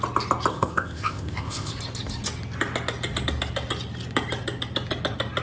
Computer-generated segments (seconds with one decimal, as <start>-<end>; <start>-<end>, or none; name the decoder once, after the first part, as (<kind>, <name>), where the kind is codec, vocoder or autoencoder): 0.5-1.7 (codec, ZipCodec)